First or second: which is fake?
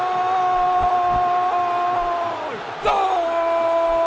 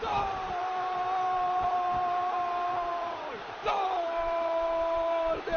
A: second